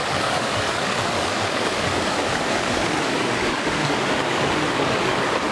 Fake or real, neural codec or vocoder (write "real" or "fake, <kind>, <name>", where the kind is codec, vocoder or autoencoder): fake, codec, DAC